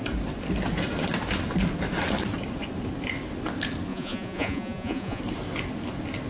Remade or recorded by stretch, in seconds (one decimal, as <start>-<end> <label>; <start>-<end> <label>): 0.0-3.9 recorded; 3.9-5.2 remade; 5.2-6.3 recorded